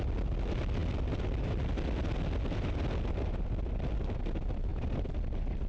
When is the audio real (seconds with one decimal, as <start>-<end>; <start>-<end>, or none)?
0.0-5.7